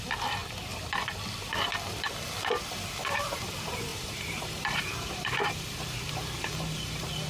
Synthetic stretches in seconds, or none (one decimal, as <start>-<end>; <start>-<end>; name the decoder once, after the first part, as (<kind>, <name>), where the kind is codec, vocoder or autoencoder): 3.9-7.3 (vocoder, BigVGAN v2)